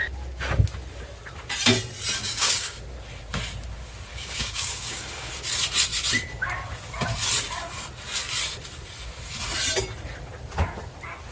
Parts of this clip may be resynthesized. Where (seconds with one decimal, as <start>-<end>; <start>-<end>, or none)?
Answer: 2.2-2.8; 4.1-5.3